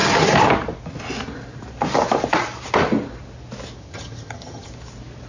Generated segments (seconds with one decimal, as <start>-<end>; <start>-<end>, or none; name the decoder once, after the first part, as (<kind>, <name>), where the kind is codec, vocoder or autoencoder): 3.8-4.7 (vocoder, HiFi-GAN)